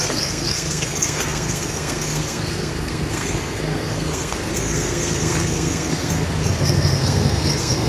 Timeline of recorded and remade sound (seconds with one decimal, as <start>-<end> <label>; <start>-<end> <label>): 0.0-7.9 remade